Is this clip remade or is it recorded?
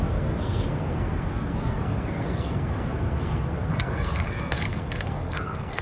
remade